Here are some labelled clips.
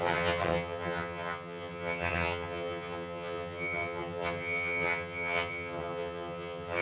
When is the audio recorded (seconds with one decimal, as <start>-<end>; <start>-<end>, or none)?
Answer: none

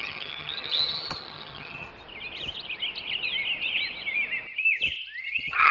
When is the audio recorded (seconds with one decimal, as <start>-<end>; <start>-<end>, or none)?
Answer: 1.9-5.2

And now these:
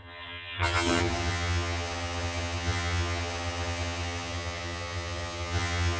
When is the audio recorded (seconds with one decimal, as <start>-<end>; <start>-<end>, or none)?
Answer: none

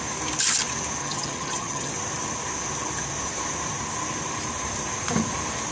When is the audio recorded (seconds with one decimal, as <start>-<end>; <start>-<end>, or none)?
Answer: 0.0-1.0; 1.9-5.7

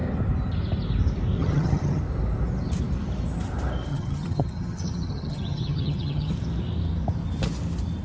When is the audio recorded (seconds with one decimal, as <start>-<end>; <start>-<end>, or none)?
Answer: 0.0-1.4; 2.0-3.9; 6.3-8.0